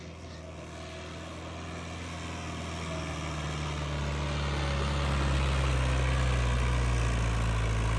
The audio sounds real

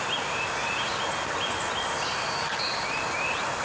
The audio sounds real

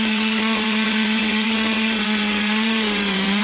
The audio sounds fake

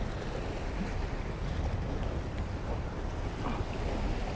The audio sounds real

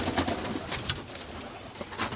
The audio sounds real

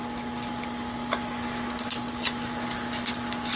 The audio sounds real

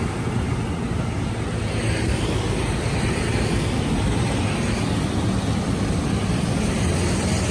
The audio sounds real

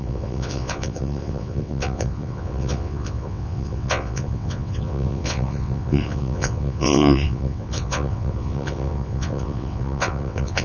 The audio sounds fake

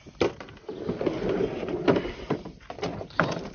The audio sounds real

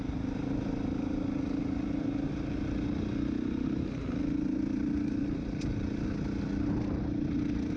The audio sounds real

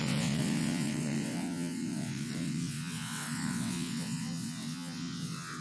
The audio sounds fake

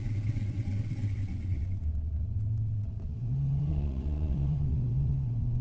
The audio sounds fake